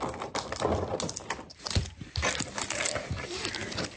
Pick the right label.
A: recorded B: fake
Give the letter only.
A